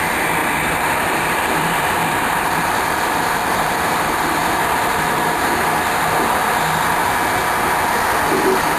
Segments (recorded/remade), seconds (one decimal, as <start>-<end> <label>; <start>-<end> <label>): 0.0-0.4 recorded; 0.4-5.4 remade; 5.4-8.8 recorded